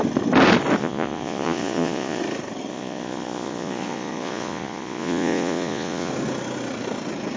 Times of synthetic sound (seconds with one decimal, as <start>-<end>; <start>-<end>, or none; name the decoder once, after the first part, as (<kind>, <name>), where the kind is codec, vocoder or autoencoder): 0.8-2.2 (vocoder, Vocos); 2.7-6.1